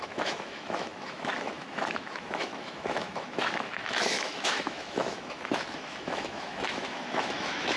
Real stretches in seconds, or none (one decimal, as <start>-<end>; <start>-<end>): none

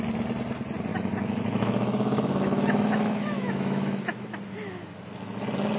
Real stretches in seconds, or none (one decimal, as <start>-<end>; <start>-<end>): 0.0-0.9; 4.4-5.8